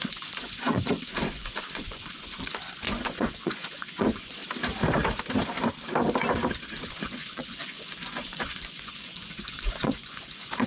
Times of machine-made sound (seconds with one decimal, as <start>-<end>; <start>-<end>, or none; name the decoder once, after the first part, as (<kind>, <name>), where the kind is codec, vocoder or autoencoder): 0.0-4.4 (vocoder, Vocos); 6.9-10.7